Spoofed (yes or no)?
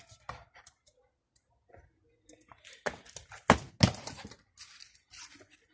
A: no